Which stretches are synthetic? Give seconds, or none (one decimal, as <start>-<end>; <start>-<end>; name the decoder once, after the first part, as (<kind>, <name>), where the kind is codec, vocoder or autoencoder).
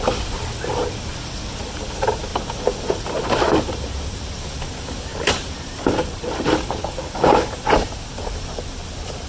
none